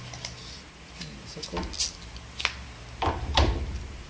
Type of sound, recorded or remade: recorded